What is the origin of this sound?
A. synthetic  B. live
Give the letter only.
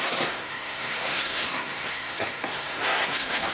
A